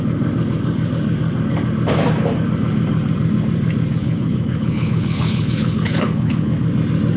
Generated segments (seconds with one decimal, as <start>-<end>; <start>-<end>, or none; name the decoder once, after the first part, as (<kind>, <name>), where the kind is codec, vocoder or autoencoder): 4.0-6.5 (codec, HILCodec)